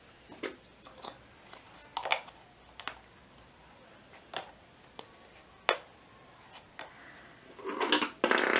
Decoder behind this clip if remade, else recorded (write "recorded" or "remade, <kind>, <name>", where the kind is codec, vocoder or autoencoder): recorded